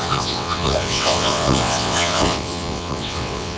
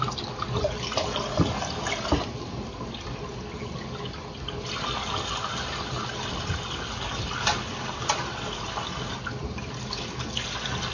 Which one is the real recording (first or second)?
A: second